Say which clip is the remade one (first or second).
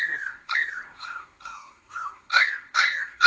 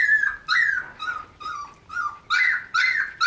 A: first